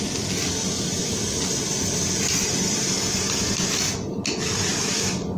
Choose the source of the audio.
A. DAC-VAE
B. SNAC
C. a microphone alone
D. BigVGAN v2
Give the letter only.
C